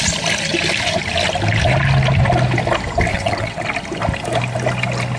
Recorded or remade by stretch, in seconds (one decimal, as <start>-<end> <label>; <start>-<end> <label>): 0.0-3.1 recorded; 3.1-3.6 remade; 3.6-5.2 recorded